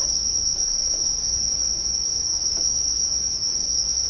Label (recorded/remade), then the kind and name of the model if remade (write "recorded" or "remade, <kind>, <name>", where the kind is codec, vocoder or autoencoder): remade, codec, DAC